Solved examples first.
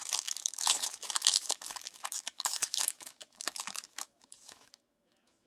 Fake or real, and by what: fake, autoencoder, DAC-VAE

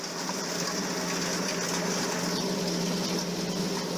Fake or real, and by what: real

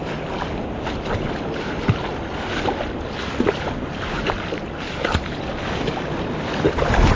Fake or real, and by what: real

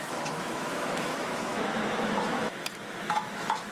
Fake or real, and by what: fake, autoencoder, DAC-VAE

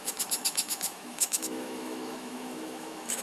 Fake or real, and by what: fake, autoencoder, DAC-VAE